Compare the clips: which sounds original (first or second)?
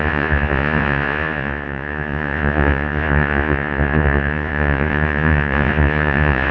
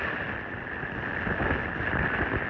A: second